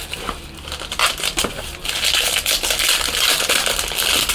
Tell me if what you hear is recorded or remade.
recorded